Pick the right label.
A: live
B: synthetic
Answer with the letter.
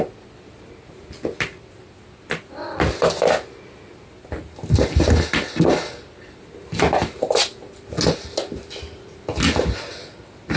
A